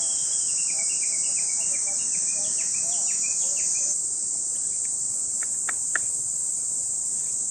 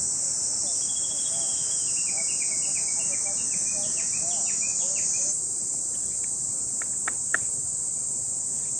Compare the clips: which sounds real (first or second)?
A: second